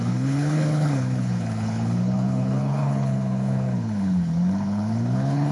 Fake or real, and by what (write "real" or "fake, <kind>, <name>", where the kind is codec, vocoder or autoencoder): fake, codec, HILCodec